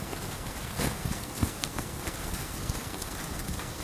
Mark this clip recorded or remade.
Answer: remade